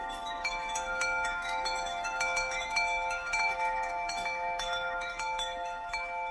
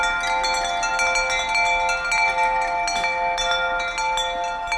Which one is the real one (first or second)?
second